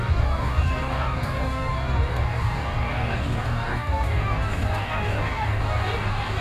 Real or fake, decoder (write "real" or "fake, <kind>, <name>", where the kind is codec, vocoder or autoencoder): fake, codec, DAC